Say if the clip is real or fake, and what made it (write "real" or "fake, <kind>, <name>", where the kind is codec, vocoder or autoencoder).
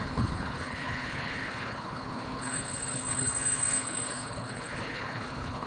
fake, codec, HILCodec